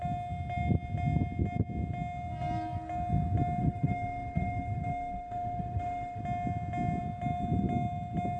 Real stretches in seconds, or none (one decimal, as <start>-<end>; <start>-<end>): 0.0-3.6; 6.2-8.4